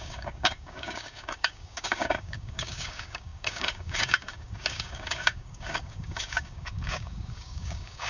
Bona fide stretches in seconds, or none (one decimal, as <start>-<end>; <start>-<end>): none